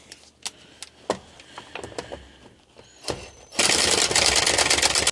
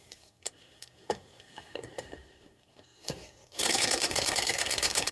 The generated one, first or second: second